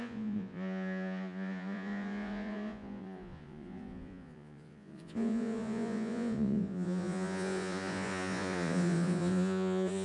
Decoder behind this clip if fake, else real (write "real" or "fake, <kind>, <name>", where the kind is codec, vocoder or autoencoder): fake, vocoder, Vocos